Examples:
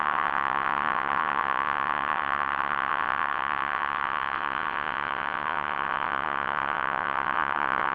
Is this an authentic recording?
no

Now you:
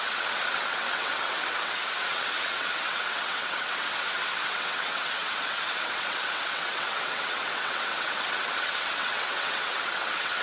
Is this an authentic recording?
no